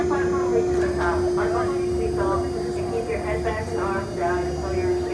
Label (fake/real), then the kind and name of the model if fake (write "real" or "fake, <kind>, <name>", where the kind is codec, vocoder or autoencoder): real